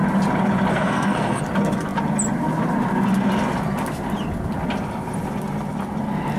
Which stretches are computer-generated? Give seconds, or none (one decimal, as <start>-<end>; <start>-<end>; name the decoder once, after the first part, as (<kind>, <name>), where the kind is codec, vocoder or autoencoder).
0.7-1.4 (codec, SNAC)